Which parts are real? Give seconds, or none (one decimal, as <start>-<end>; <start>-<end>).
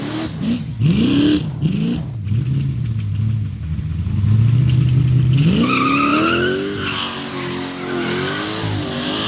0.0-9.3